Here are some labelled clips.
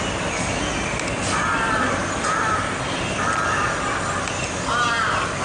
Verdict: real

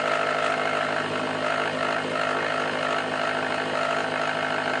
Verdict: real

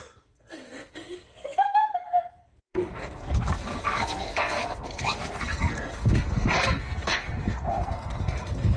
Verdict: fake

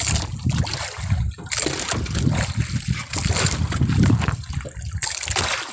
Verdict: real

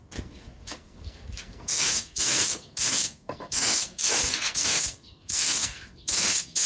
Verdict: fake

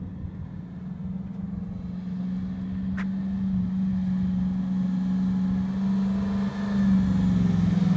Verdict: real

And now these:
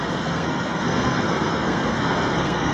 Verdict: fake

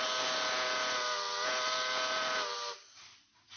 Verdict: real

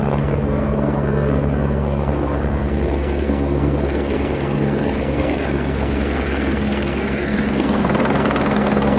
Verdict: fake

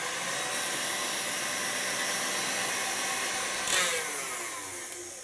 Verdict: real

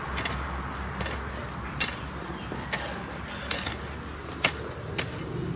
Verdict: real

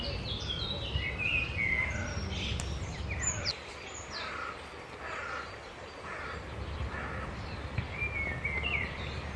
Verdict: real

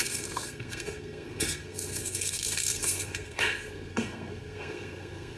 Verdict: fake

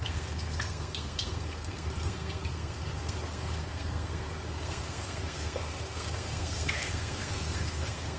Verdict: fake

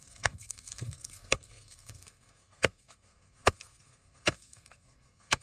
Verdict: fake